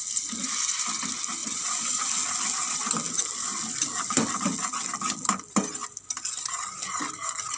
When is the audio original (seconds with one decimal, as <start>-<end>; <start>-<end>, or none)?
0.0-7.6

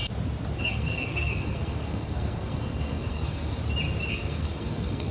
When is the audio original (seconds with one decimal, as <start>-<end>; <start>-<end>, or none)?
0.0-0.6; 3.6-4.1

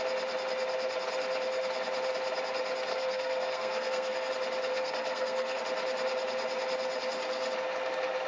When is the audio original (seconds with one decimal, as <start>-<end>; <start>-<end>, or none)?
0.0-2.9; 4.3-4.7; 5.6-8.3

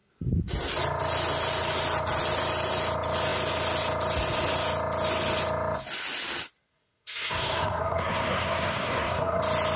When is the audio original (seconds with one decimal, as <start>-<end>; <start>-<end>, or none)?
0.0-6.7; 9.4-9.8

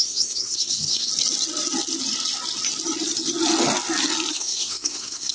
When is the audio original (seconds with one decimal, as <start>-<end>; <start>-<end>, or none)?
1.1-4.3

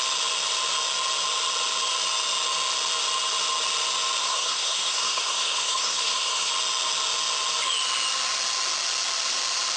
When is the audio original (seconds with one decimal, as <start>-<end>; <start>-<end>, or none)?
0.0-4.2; 6.5-9.8

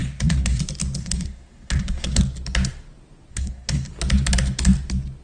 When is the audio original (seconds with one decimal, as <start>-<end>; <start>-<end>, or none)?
0.6-1.0; 2.2-3.3; 3.9-5.2

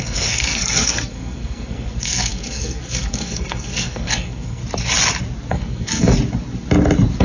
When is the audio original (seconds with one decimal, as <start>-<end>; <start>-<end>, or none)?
4.6-5.5; 6.1-7.2